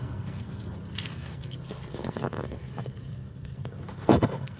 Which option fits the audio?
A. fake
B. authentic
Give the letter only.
A